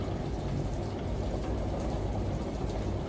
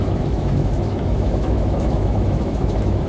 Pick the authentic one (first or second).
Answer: first